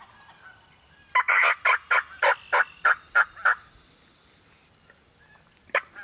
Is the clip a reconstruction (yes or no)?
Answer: no